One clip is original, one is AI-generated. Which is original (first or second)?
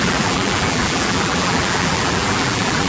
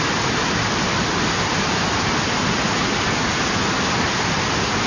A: second